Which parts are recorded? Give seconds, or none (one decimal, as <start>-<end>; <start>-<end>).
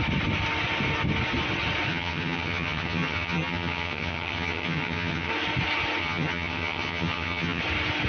0.0-1.9; 5.3-6.0; 7.6-8.1